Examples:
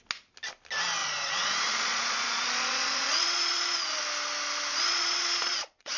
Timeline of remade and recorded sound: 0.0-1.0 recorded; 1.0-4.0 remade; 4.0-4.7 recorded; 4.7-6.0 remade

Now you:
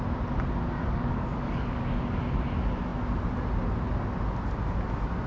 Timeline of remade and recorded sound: 0.0-0.8 recorded; 0.8-2.2 remade; 2.2-5.3 recorded

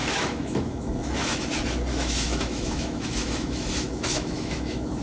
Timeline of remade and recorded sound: 0.0-1.4 remade; 1.4-1.9 recorded; 1.9-5.0 remade